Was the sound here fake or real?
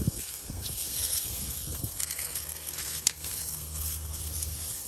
fake